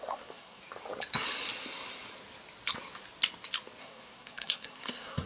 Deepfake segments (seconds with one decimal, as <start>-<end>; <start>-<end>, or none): 0.0-0.6; 3.8-5.3

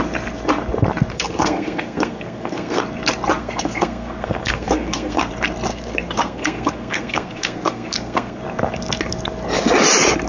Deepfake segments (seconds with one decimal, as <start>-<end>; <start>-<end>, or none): 1.1-2.8; 3.4-5.3; 5.7-8.4

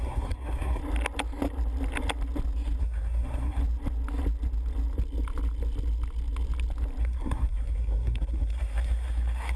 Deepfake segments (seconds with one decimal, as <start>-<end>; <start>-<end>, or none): 0.0-0.8; 2.8-3.6; 7.0-9.6

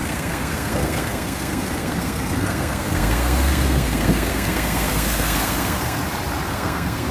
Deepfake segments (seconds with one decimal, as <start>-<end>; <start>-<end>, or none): 0.0-6.0; 6.5-7.1

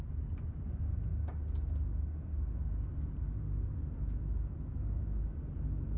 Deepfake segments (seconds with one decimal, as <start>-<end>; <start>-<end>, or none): none

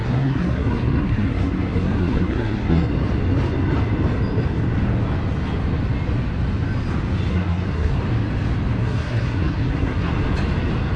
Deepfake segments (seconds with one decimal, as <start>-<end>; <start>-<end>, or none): 0.0-2.9; 7.3-8.0; 8.8-10.1

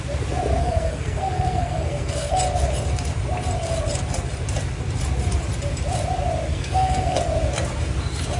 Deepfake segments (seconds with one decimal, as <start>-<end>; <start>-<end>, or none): 0.6-2.4; 6.5-7.2